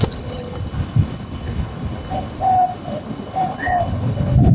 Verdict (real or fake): fake